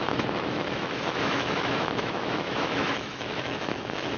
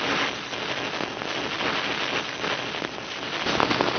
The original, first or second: second